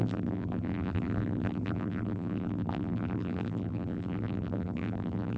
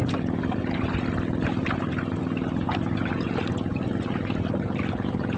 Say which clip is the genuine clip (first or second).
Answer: second